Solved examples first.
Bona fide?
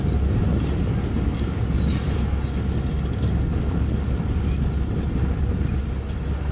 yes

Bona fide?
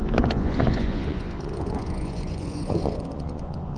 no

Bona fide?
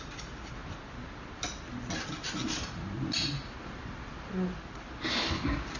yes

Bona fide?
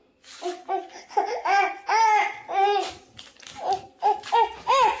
yes